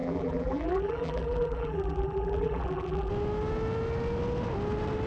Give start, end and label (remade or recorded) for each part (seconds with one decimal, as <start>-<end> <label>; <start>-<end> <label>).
0.0-3.1 remade; 3.1-5.1 recorded